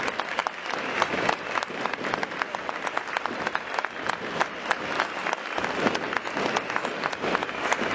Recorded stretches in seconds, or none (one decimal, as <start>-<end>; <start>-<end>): 0.0-7.9